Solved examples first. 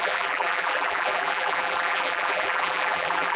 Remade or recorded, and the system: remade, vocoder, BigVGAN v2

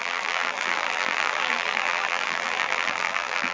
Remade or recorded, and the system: remade, vocoder, BigVGAN v2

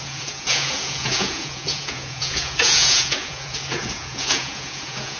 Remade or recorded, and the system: remade, vocoder, Vocos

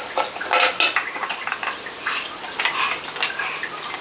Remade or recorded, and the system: recorded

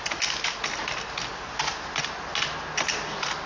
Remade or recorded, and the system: recorded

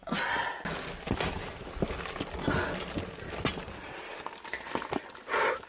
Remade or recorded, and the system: recorded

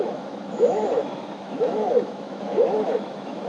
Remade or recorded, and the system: remade, autoencoder, DAC-VAE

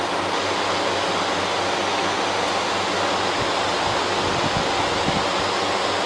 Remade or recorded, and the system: recorded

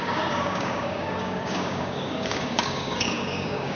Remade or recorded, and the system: remade, codec, DAC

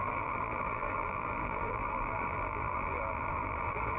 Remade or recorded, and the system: remade, vocoder, BigVGAN v2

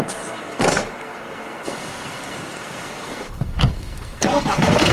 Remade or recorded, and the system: remade, codec, SNAC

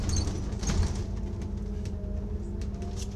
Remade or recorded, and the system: recorded